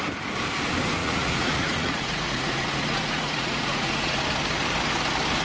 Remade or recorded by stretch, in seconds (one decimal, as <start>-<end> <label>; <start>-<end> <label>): 0.0-1.0 recorded; 1.0-4.2 remade; 4.2-5.4 recorded